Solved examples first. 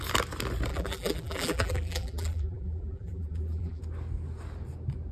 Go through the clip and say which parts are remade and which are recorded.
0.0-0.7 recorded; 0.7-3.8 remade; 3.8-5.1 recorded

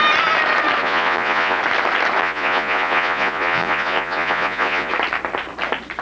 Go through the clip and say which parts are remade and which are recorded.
0.0-0.8 recorded; 0.8-1.6 remade; 1.6-2.2 recorded; 2.2-4.9 remade; 4.9-6.0 recorded

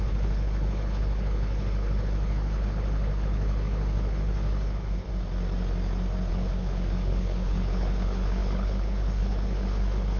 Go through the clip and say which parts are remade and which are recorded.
0.0-5.1 remade; 5.1-6.3 recorded; 6.3-10.2 remade

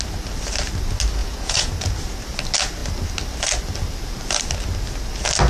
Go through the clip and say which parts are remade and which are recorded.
0.0-1.2 recorded; 1.2-1.7 remade; 1.7-5.5 recorded

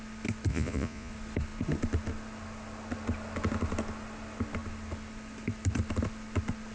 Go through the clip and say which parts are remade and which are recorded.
0.0-0.5 recorded; 0.5-1.1 remade; 1.1-6.7 recorded

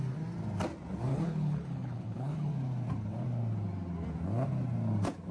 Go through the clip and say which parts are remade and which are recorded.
0.0-1.1 recorded; 1.1-2.5 remade; 2.5-5.3 recorded

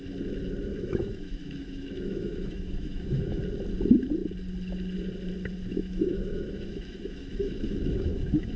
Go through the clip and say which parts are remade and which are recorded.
0.0-0.7 recorded; 0.7-3.4 remade; 3.4-5.7 recorded; 5.7-8.6 remade

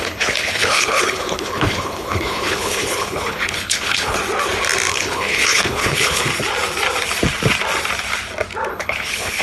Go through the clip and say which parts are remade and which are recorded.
0.0-4.2 remade; 4.2-4.9 recorded; 4.9-6.3 remade; 6.3-8.7 recorded; 8.7-9.4 remade